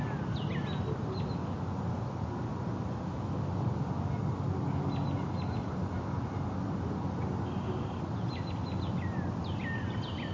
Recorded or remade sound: recorded